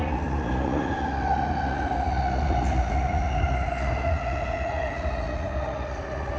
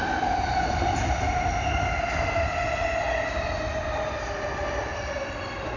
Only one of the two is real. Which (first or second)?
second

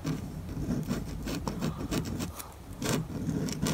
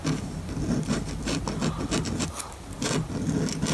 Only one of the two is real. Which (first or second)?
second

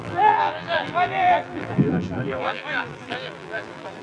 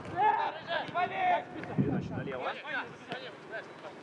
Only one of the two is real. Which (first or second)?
second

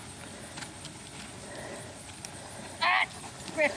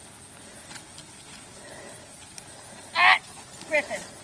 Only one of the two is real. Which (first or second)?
second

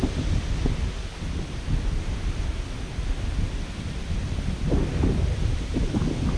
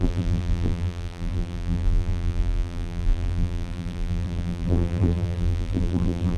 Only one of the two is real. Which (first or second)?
first